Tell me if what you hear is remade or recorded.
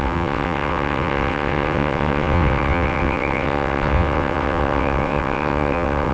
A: remade